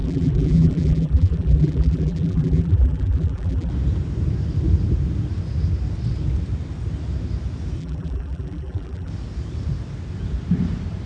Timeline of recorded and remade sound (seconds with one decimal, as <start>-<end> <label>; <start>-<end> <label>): 0.0-3.7 remade; 3.7-7.8 recorded; 7.8-9.1 remade; 9.1-11.1 recorded